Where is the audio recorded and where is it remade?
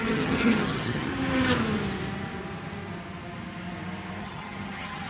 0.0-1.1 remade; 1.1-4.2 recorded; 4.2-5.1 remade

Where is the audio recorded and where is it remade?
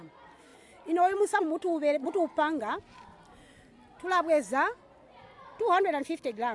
0.0-6.5 recorded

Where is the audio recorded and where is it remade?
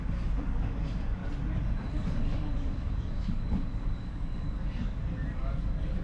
0.0-1.2 remade; 1.2-1.9 recorded; 1.9-6.0 remade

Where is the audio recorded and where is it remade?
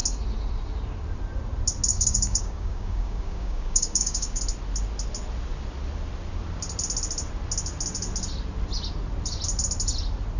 0.0-1.9 recorded; 1.9-4.4 remade; 4.4-10.4 recorded